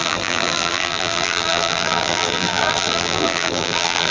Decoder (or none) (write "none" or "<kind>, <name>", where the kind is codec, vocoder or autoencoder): vocoder, BigVGAN v2